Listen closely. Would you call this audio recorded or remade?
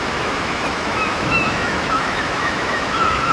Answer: remade